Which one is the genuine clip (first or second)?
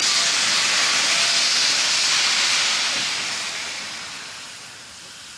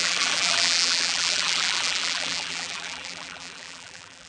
first